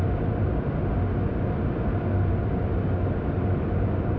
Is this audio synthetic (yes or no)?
no